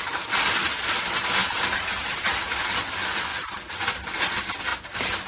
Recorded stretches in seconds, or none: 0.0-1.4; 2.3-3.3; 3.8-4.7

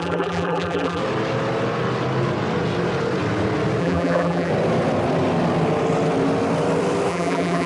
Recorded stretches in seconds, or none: 1.0-3.8; 4.5-7.1

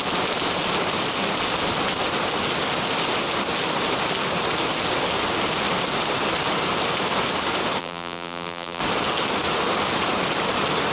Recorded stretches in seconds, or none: 0.0-7.8; 8.8-10.9